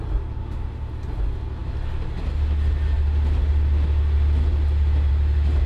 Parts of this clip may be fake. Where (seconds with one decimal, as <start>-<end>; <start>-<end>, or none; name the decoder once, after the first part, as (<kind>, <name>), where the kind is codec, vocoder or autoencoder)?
0.4-0.9 (autoencoder, DAC-VAE)